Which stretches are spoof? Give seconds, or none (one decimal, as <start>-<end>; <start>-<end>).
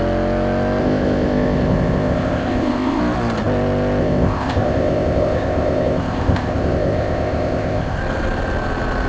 0.8-3.0; 4.0-8.0